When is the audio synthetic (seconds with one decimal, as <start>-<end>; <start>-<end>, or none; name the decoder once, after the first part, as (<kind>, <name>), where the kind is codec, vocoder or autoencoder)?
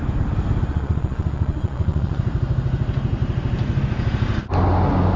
0.7-2.2 (vocoder, Vocos)